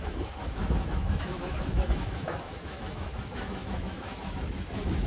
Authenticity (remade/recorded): remade